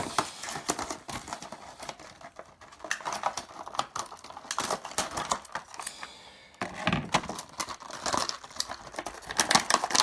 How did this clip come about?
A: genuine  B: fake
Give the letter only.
A